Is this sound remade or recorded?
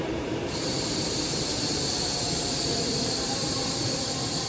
remade